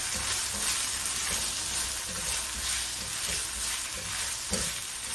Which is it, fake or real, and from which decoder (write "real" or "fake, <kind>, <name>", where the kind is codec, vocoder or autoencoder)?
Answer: real